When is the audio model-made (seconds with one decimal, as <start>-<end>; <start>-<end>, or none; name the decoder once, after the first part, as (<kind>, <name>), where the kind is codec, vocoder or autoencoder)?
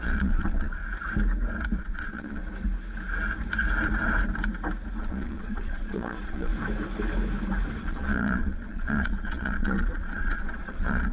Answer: 0.0-0.8 (vocoder, Vocos); 1.8-2.4; 5.0-6.5; 7.8-11.1